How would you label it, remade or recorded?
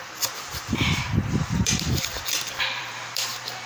remade